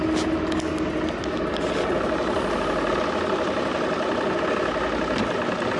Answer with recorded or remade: recorded